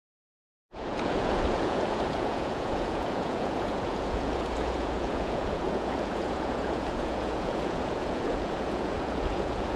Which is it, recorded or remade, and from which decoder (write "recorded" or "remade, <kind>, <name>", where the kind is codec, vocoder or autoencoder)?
remade, vocoder, Vocos